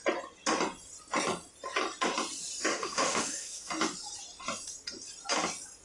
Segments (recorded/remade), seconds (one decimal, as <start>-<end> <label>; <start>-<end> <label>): 0.0-2.7 recorded; 2.7-3.7 remade; 3.7-5.8 recorded